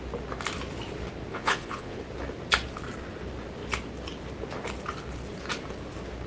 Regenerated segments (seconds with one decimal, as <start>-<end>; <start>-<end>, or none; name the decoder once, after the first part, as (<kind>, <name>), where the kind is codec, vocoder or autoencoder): 1.3-2.0 (vocoder, Vocos)